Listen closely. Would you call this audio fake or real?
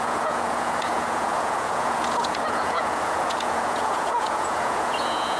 fake